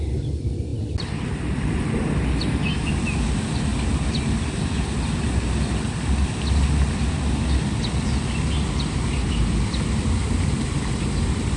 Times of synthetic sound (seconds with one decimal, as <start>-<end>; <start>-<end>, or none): none